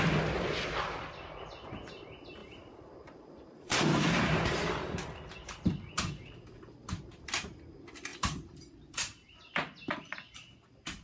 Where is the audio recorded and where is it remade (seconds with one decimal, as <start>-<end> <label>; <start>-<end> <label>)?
0.0-2.4 recorded; 2.4-5.5 remade; 5.5-8.1 recorded; 8.1-9.4 remade; 9.4-11.0 recorded